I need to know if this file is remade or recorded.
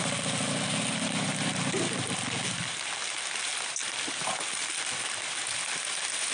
recorded